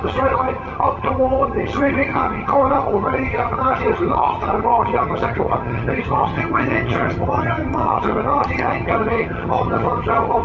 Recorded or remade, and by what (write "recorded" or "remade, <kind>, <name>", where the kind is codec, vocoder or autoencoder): remade, vocoder, HiFi-GAN